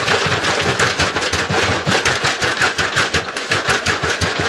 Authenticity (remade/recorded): remade